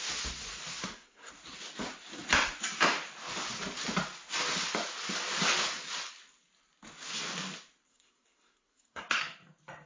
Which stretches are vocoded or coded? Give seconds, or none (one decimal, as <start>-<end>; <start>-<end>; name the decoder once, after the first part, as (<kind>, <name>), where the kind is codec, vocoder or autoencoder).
0.7-1.3 (codec, SNAC); 7.9-9.2